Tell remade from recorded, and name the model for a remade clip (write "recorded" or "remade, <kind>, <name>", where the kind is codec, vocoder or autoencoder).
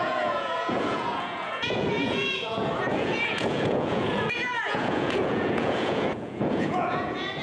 remade, vocoder, Vocos